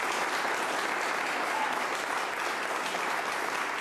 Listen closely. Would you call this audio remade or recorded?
recorded